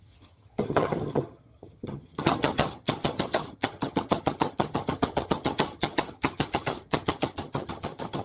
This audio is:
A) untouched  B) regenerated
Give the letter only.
B